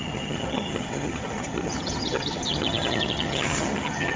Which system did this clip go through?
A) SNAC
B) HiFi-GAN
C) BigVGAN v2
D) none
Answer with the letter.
B